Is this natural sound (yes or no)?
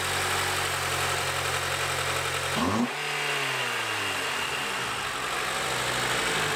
yes